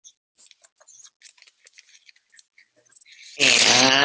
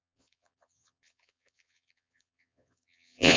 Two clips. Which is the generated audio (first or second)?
second